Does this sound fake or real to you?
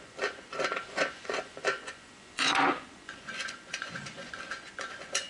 fake